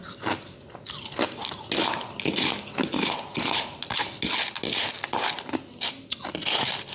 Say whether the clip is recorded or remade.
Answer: recorded